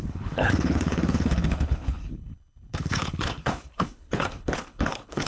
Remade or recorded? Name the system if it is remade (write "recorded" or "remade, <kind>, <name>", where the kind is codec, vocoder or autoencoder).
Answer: remade, codec, HILCodec